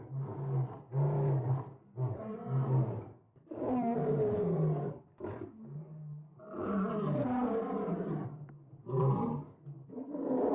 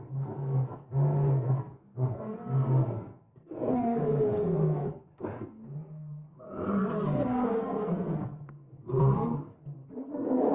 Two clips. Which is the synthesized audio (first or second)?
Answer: second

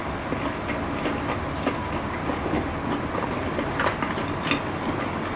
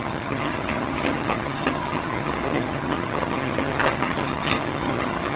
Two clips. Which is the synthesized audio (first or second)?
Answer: second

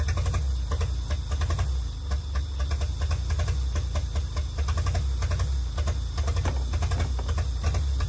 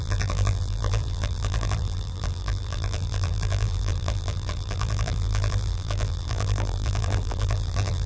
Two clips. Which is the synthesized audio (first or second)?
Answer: second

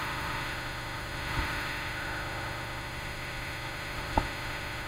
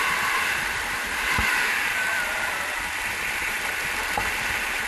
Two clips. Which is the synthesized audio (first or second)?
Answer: first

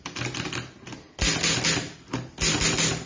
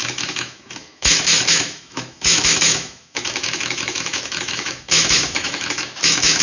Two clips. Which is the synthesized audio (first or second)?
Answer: second